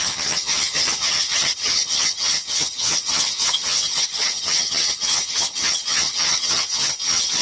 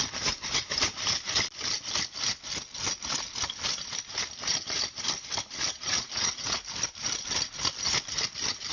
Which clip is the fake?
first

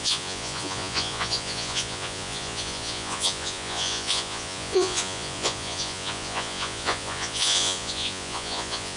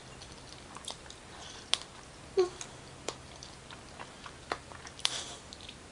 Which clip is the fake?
first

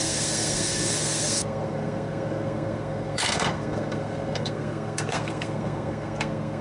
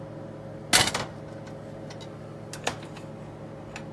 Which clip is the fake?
first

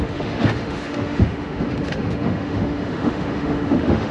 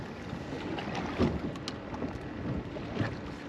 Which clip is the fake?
first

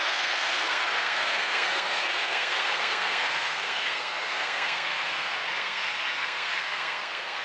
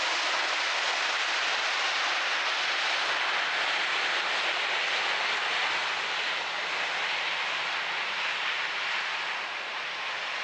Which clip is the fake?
first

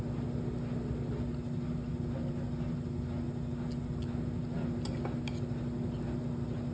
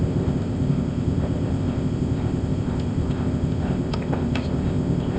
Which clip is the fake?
second